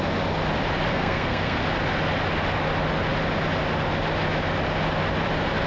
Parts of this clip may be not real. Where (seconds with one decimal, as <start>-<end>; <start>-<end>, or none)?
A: 0.9-1.6